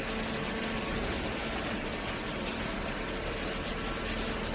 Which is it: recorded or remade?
recorded